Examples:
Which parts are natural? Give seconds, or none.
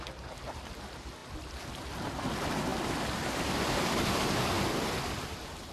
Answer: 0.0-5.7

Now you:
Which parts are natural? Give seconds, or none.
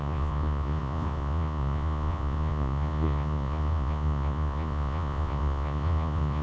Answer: none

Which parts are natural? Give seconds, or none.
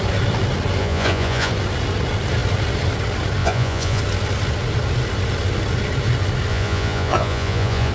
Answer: 0.0-0.8; 1.5-3.4; 4.0-6.5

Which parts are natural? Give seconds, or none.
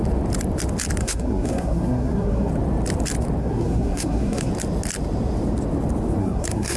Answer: 0.0-1.0; 2.5-3.4; 4.5-6.2